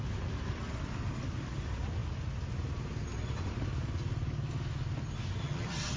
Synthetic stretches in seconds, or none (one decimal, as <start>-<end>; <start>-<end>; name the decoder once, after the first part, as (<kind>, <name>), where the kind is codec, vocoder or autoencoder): 5.4-6.0 (vocoder, HiFi-GAN)